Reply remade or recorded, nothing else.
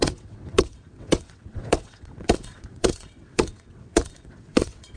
remade